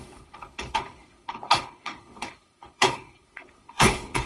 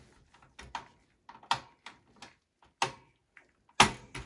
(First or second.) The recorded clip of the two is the second